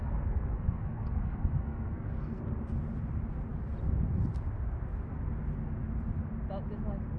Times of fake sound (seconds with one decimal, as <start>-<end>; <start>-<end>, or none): 0.0-2.4